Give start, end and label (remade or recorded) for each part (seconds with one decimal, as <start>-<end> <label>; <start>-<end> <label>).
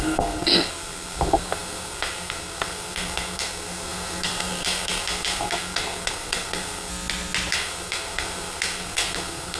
0.0-6.9 remade; 6.9-7.5 recorded; 7.5-9.6 remade